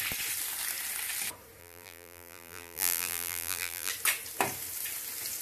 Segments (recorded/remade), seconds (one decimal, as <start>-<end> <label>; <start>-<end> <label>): 0.0-1.6 recorded; 1.6-3.9 remade; 3.9-5.4 recorded